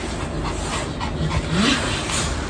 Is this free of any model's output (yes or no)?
yes